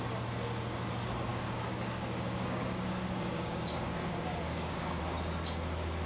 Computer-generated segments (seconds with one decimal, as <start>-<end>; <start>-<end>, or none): 1.3-5.0

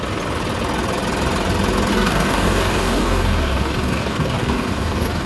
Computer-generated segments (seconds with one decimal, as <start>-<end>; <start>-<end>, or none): 1.9-5.3

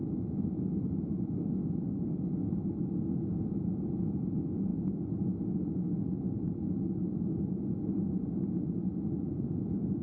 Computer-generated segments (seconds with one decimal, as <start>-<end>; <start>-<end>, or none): 1.6-2.5

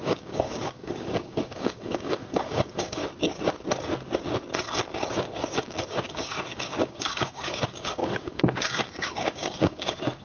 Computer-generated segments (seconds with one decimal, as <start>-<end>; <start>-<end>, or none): 0.0-3.0; 5.1-10.2

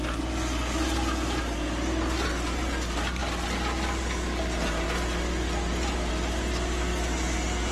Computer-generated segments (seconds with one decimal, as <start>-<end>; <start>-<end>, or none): none